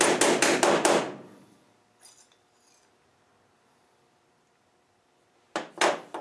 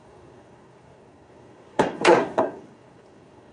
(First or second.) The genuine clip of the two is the first